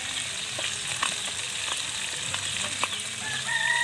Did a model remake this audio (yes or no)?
no